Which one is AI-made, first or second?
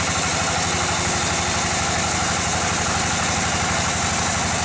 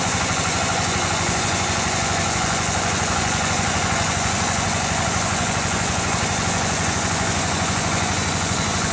second